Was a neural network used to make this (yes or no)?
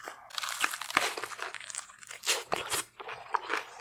no